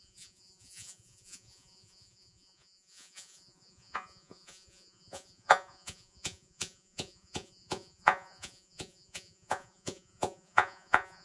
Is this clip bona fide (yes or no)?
no